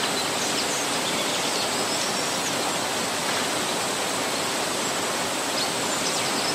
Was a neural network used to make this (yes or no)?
no